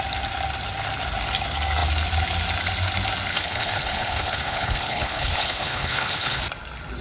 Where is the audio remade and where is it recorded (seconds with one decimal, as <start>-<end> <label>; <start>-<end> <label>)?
0.0-3.3 recorded; 3.3-6.4 remade; 6.4-7.0 recorded